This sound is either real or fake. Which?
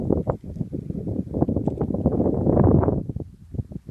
real